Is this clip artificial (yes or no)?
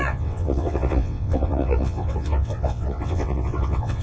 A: yes